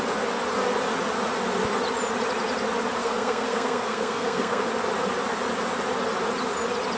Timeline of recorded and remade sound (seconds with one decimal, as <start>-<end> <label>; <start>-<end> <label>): 0.0-3.0 recorded; 3.0-4.7 remade; 4.7-7.0 recorded